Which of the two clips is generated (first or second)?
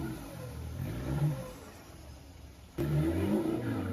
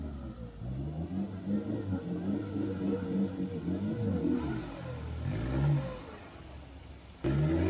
first